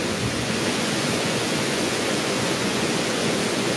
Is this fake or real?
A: fake